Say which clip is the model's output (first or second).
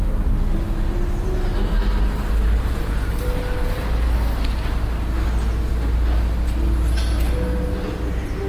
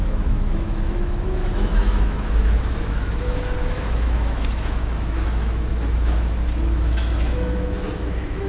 second